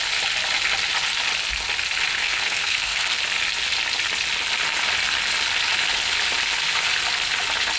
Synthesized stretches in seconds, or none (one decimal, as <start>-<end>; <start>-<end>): 2.2-3.2